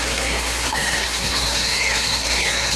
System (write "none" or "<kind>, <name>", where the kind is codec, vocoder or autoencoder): codec, SNAC